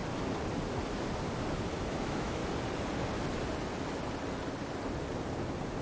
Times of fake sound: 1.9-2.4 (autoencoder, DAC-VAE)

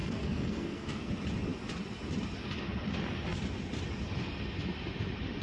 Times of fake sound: 0.0-1.1 (codec, SNAC)

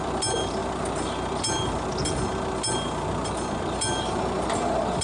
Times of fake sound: none

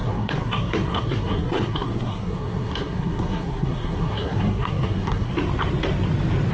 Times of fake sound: 0.0-5.3 (codec, SNAC)

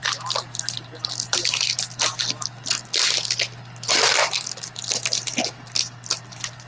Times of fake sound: none